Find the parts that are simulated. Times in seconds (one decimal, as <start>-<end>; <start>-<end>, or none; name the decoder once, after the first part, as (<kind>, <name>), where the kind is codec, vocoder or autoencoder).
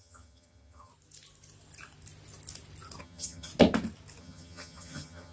0.0-0.9 (vocoder, HiFi-GAN); 3.0-3.5; 4.2-5.3